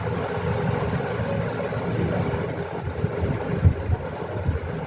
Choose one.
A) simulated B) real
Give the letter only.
B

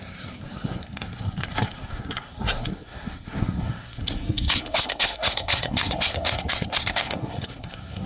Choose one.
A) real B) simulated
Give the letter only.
B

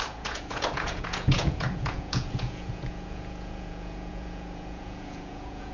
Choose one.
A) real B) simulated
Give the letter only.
B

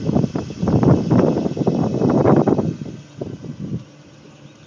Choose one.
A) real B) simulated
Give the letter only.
A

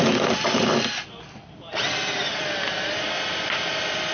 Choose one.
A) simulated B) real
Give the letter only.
B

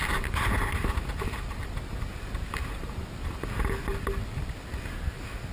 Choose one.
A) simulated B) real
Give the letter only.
B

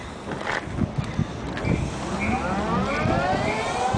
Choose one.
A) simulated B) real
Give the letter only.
B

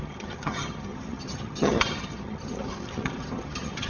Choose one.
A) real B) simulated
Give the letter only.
B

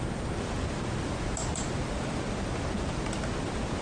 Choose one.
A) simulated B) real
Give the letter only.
B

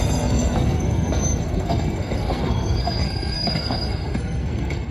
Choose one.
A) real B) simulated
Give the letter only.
B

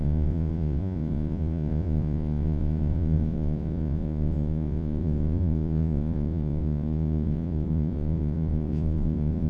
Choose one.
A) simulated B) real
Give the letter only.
A